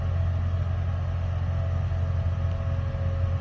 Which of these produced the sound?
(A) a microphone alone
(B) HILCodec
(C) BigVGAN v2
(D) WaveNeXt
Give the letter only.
A